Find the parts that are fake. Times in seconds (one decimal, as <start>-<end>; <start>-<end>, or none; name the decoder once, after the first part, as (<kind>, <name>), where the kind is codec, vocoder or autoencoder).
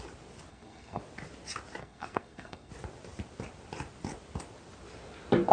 0.5-1.0 (codec, SNAC); 1.8-2.7